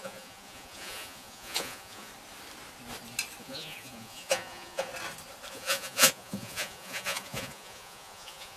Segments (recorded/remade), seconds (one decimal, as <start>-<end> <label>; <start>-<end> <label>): 0.0-2.1 remade; 2.1-3.4 recorded; 3.4-4.9 remade; 4.9-5.5 recorded; 5.5-8.6 remade